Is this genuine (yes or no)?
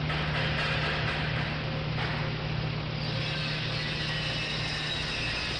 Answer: yes